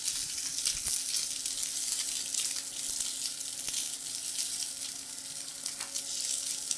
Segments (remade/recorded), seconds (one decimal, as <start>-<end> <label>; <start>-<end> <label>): 0.0-6.8 recorded